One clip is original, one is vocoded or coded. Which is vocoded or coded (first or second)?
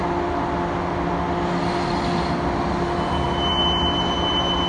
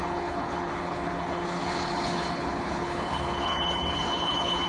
second